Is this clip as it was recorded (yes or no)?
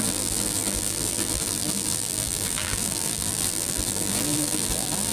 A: no